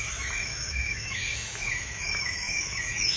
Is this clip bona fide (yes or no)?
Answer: no